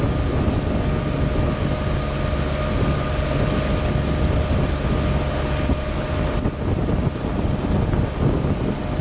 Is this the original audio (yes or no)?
yes